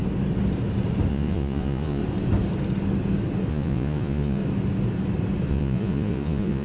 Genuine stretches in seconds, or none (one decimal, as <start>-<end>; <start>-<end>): 0.0-1.1; 2.0-3.5; 4.4-5.5